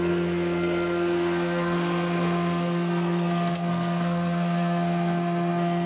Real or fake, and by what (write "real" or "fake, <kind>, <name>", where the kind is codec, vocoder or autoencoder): fake, codec, SNAC